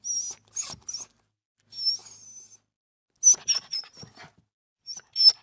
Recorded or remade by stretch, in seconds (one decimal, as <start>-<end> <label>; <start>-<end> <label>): 0.0-5.4 recorded